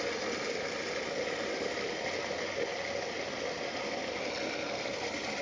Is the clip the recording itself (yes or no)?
yes